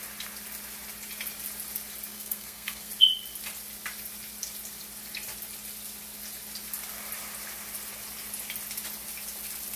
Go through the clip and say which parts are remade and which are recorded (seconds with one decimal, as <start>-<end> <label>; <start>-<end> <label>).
0.0-2.1 recorded; 2.1-2.9 remade; 2.9-9.8 recorded